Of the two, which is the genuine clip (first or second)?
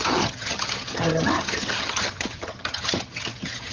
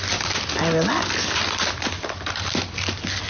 second